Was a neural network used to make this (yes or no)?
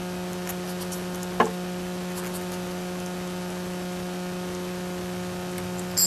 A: no